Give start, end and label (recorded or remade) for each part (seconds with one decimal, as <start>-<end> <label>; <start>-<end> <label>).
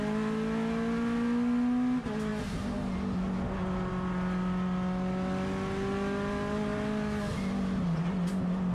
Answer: 0.0-8.7 recorded